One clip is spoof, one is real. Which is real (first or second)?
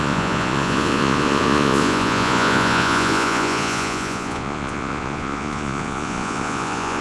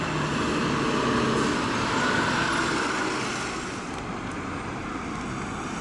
second